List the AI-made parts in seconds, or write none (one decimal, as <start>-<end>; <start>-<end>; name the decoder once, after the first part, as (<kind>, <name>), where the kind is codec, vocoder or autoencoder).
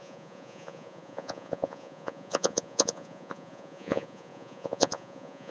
0.0-5.5 (vocoder, Vocos)